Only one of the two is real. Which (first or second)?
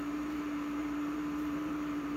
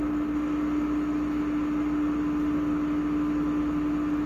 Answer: second